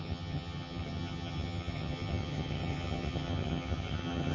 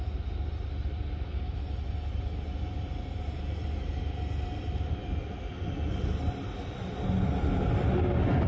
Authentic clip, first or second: second